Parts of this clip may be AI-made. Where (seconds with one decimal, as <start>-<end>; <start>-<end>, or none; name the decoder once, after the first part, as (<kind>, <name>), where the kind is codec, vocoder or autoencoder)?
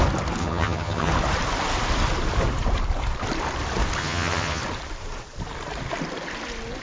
0.4-1.1 (vocoder, HiFi-GAN); 4.0-4.6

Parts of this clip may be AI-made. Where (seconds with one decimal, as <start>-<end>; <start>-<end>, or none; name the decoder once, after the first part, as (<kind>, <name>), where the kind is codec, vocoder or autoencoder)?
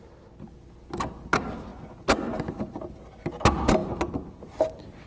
none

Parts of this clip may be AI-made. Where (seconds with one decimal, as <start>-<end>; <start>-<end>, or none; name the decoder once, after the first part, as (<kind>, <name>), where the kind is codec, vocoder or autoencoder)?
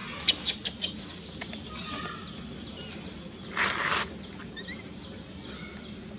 none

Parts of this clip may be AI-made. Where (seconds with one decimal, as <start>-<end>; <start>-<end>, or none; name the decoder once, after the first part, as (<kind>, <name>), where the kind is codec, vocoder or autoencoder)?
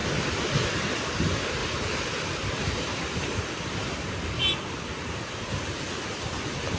none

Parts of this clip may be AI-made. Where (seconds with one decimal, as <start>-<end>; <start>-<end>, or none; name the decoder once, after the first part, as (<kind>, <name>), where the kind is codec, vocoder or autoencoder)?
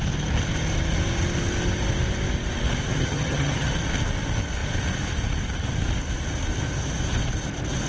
2.9-3.7 (vocoder, HiFi-GAN)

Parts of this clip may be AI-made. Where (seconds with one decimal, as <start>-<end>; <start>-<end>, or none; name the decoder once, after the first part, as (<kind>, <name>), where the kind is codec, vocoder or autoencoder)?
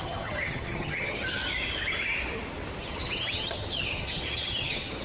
0.0-1.4 (vocoder, HiFi-GAN); 2.8-5.0